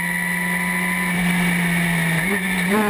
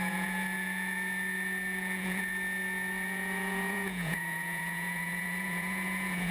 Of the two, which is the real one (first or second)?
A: first